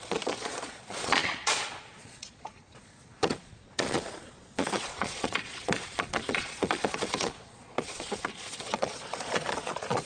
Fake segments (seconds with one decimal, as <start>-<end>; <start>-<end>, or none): 0.0-10.0